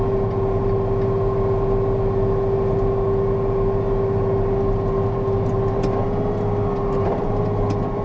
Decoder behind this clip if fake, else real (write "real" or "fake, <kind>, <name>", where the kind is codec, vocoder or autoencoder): real